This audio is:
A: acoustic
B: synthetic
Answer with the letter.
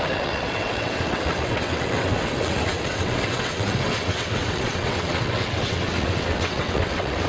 B